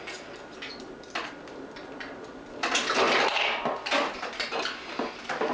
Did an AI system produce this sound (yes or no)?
no